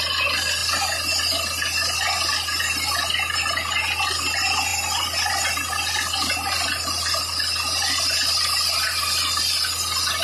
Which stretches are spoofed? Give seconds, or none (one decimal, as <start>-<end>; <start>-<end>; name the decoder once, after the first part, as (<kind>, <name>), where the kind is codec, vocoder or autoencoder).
none